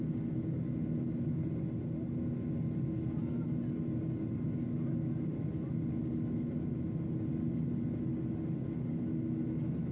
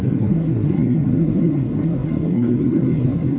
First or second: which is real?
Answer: first